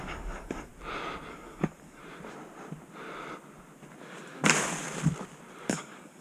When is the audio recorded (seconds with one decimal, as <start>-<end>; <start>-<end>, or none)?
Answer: 0.7-1.3; 2.0-5.7